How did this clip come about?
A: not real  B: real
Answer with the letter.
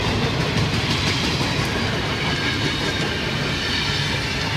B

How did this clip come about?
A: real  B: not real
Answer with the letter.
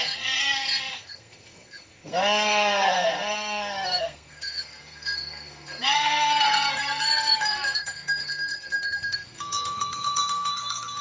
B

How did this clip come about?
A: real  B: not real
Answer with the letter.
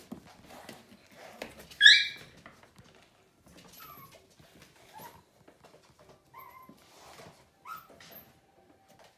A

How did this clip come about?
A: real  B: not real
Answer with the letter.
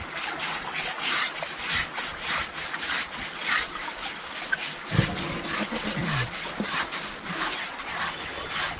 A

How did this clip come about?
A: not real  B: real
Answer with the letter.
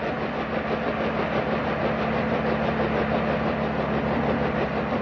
B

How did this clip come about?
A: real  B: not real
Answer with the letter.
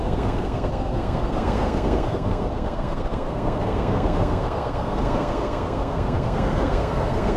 B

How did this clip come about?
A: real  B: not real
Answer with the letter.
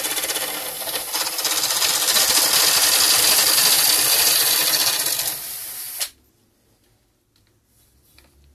A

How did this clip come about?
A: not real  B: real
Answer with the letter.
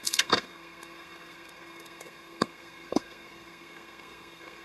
A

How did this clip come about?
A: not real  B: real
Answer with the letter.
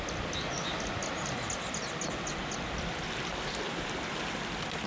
B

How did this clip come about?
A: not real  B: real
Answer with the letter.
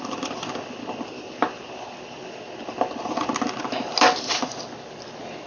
B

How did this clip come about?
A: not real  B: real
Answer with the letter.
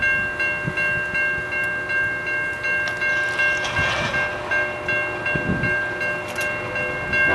B